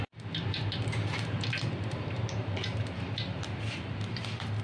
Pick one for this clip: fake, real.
fake